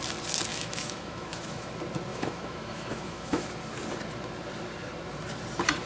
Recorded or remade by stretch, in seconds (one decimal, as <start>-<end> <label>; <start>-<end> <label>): 0.0-0.5 recorded; 0.5-1.7 remade; 1.7-2.1 recorded; 2.1-3.5 remade; 3.5-5.9 recorded